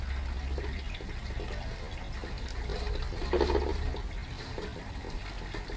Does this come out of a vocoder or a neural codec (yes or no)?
no